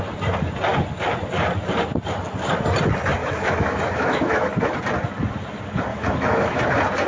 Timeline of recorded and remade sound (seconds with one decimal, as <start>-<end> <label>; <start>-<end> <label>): 0.0-3.2 recorded; 3.2-4.5 remade; 4.5-5.9 recorded; 5.9-6.6 remade; 6.6-7.1 recorded